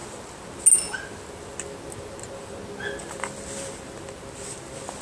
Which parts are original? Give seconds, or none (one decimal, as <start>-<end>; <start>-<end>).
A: 0.0-5.0